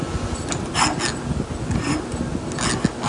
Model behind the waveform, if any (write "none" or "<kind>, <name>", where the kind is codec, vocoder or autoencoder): none